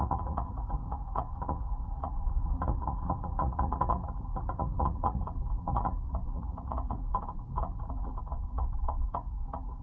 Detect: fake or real fake